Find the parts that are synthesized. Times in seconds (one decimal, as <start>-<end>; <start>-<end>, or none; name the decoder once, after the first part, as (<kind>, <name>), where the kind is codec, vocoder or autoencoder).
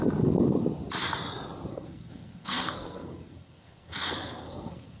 1.7-5.0 (codec, SNAC)